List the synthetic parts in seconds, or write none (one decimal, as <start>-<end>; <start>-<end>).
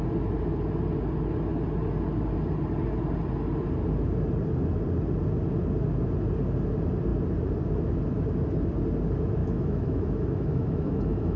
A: 9.4-11.4